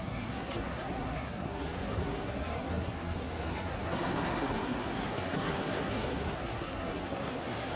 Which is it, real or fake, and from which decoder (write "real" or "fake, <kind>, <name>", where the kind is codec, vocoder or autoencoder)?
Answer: fake, codec, SNAC